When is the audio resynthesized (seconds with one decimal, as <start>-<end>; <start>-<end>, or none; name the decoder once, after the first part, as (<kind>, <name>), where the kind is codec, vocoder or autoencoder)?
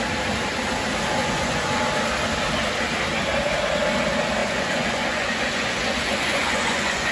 1.2-1.8 (vocoder, Vocos); 4.4-7.1